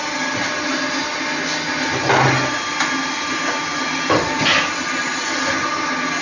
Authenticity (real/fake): real